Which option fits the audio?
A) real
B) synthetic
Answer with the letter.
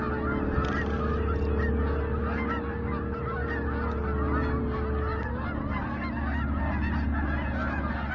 A